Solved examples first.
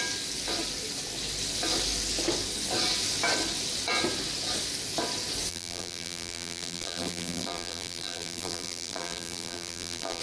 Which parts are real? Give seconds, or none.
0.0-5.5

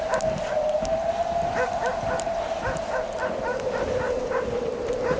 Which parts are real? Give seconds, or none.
0.0-5.2

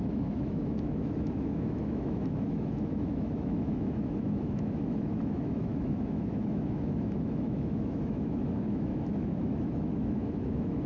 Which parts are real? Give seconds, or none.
none

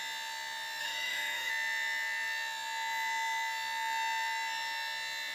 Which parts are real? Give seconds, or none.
0.0-0.8; 1.5-5.3

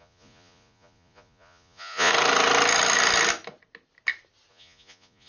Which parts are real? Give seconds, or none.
2.1-4.5